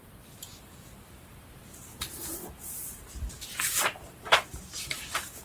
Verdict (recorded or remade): remade